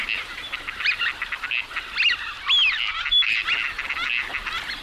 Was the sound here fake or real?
real